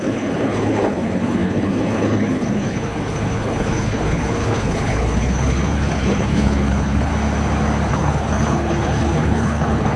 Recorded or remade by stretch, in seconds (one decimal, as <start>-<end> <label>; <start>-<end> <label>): 0.0-7.1 remade; 7.1-7.9 recorded; 7.9-10.0 remade

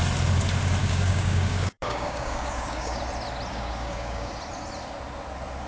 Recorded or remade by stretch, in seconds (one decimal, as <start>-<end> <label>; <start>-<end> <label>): 0.0-0.8 recorded; 0.8-3.0 remade; 3.0-3.5 recorded; 3.5-4.3 remade; 4.3-5.7 recorded

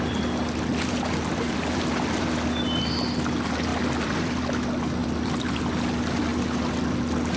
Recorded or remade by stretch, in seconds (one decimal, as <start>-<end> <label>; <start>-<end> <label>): 0.0-0.7 recorded; 0.7-2.2 remade; 2.2-3.7 recorded; 3.7-4.4 remade; 4.4-5.0 recorded; 5.0-5.6 remade; 5.6-7.4 recorded

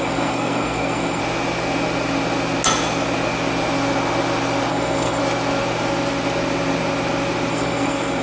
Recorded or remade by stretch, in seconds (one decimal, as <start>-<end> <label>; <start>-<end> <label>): 0.0-1.2 remade; 1.2-4.7 recorded; 4.7-5.2 remade; 5.2-7.5 recorded; 7.5-8.2 remade